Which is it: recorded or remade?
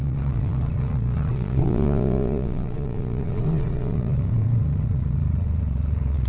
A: remade